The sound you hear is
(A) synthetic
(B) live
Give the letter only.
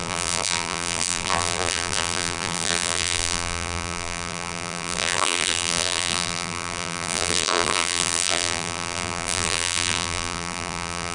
A